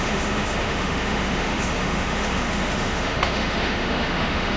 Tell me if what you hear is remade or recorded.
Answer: remade